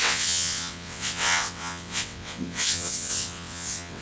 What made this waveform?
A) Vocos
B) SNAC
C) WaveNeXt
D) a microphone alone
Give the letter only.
C